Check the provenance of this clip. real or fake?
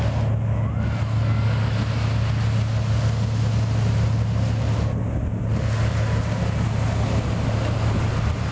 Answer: real